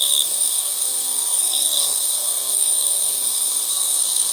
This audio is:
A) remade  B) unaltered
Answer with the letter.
A